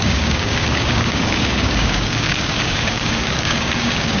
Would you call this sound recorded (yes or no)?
no